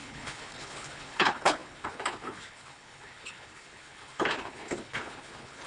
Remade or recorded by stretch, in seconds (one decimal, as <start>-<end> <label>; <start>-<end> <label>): 0.0-5.7 remade